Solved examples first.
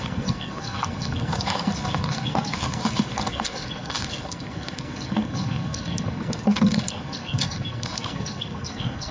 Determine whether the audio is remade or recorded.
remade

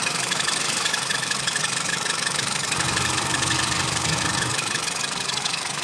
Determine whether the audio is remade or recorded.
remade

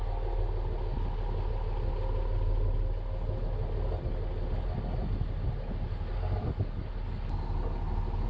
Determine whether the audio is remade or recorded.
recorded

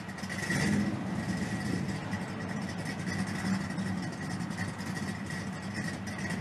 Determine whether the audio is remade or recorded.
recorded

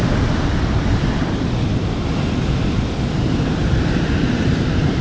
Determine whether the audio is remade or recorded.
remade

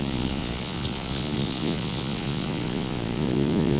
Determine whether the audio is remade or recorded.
remade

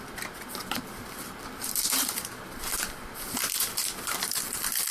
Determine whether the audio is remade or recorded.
remade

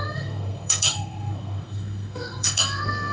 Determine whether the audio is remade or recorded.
remade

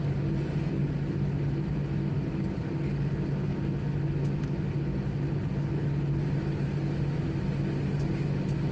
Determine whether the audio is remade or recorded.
recorded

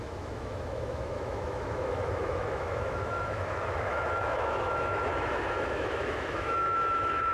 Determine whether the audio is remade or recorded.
remade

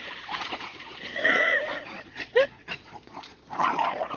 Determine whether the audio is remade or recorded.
remade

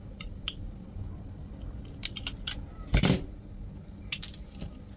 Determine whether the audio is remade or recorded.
recorded